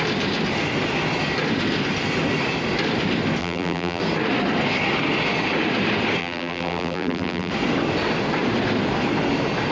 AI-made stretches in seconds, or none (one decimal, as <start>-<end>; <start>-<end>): 3.4-4.0; 6.2-7.5